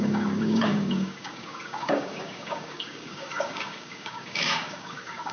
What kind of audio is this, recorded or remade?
remade